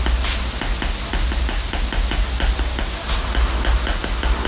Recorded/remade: recorded